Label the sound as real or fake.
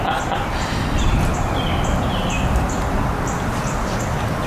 real